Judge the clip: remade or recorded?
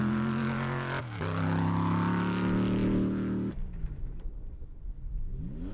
recorded